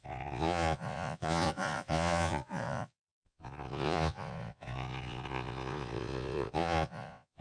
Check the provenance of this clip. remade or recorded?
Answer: remade